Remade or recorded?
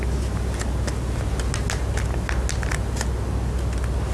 recorded